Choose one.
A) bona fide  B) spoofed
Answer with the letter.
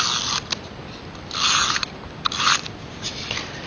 B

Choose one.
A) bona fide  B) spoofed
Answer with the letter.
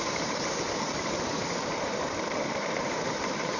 B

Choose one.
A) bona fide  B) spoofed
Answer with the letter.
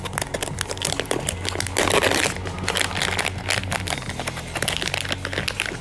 A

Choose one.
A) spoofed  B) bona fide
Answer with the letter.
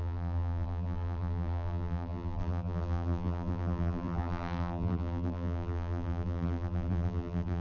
A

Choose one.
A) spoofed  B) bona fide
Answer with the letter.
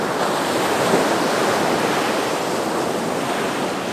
B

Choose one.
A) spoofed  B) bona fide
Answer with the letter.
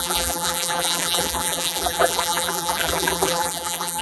A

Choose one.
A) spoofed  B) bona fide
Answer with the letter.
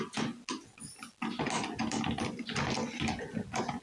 B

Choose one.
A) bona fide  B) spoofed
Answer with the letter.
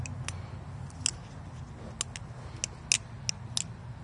A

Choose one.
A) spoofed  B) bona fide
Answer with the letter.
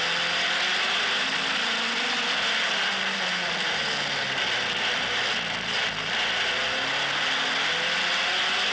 B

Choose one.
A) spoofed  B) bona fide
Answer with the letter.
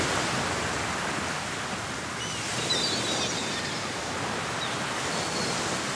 B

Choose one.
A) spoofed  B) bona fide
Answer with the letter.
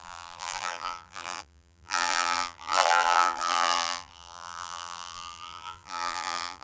A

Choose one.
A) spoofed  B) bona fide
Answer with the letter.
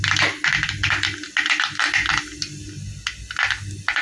B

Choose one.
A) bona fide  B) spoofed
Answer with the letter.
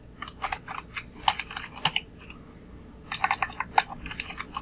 A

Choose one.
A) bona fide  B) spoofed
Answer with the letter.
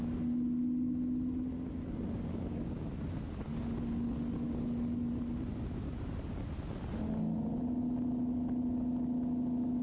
A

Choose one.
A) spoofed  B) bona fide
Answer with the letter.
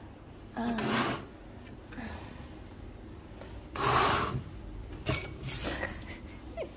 B